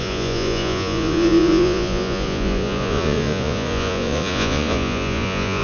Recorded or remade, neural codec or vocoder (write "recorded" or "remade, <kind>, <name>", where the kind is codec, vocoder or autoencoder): remade, vocoder, Vocos